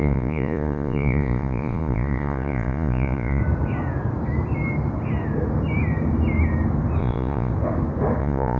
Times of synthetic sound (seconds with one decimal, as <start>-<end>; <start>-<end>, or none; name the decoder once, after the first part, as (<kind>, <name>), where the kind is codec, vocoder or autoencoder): 0.0-3.4 (vocoder, Vocos); 7.0-7.5; 8.2-8.6

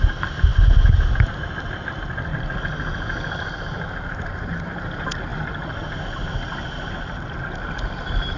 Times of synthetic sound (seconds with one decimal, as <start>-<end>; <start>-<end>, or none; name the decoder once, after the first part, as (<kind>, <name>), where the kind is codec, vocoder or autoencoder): none

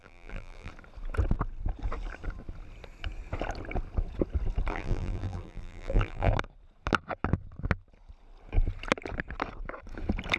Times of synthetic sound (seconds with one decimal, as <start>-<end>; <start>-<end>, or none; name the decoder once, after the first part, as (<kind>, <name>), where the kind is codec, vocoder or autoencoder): 0.0-0.7 (vocoder, BigVGAN v2); 4.7-6.3

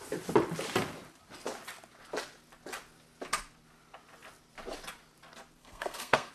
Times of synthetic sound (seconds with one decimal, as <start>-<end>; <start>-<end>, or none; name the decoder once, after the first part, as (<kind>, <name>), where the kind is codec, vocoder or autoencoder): 5.6-6.3 (codec, SNAC)

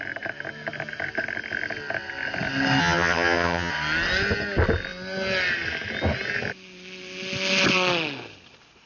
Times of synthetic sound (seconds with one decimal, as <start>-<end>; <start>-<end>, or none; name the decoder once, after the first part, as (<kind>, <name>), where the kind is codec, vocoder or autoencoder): 2.8-3.7 (vocoder, HiFi-GAN)